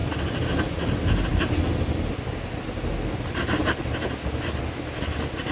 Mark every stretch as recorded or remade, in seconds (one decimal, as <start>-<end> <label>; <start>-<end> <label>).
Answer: 0.0-5.5 recorded